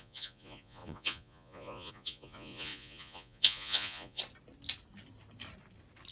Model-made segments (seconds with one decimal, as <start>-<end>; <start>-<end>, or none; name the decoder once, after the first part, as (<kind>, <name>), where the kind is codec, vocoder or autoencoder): 0.0-4.2 (vocoder, Vocos)